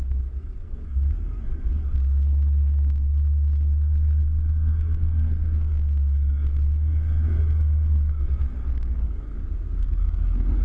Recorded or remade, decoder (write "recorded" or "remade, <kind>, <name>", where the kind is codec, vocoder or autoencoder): remade, codec, SNAC